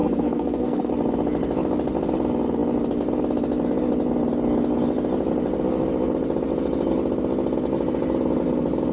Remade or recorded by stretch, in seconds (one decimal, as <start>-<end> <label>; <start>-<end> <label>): 0.0-0.9 remade; 0.9-8.9 recorded